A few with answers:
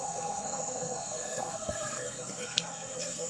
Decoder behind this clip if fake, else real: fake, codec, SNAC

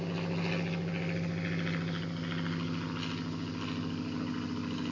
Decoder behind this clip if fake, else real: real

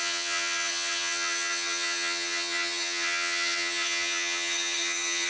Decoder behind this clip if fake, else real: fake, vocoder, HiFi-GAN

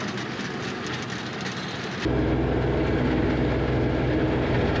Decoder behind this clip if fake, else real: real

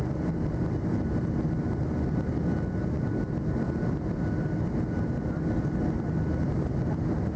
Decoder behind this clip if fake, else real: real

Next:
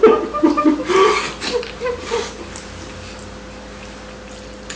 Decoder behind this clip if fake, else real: real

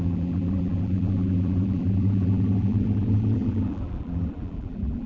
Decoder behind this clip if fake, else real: fake, vocoder, BigVGAN v2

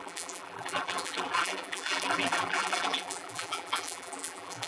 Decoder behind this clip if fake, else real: fake, vocoder, BigVGAN v2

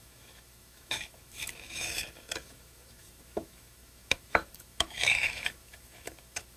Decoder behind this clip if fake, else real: fake, autoencoder, DAC-VAE